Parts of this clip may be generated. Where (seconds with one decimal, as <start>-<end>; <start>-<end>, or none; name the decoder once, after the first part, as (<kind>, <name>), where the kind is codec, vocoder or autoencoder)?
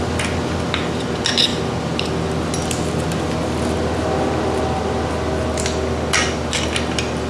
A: none